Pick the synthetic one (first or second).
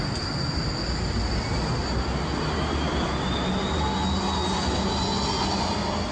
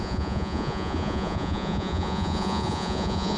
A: second